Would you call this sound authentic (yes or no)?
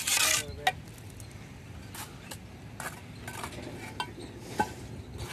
yes